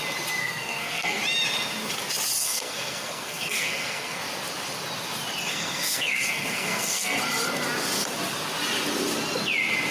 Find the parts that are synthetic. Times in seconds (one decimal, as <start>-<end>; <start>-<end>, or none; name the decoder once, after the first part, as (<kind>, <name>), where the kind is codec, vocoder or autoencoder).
0.4-1.2 (codec, SNAC); 2.4-4.2; 5.5-7.2